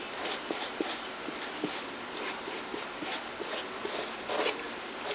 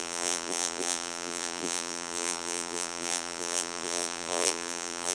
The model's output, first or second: second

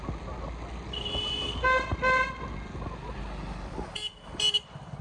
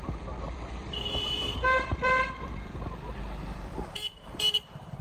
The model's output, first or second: second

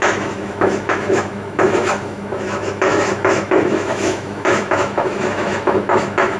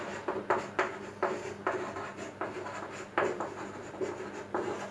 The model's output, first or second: first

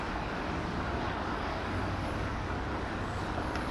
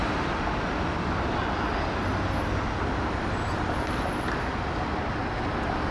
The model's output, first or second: first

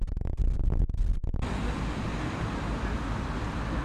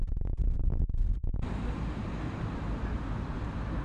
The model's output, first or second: second